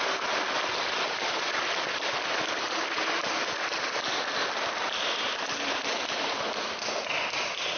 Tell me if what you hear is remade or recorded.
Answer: recorded